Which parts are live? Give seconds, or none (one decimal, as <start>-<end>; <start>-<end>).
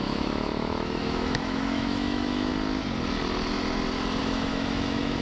2.5-4.2